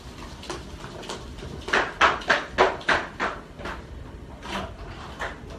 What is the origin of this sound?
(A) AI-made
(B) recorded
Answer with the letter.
B